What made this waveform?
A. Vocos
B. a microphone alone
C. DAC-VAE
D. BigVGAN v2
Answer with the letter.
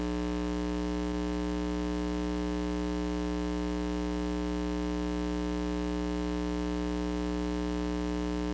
B